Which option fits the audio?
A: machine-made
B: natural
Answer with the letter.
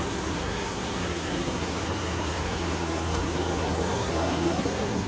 A